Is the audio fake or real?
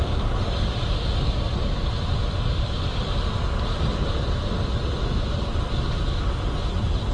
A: real